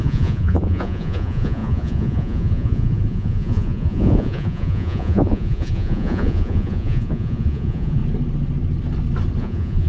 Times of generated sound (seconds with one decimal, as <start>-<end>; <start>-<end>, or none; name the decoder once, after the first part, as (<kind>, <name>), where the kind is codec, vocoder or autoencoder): 0.0-8.0 (vocoder, Vocos); 9.4-9.9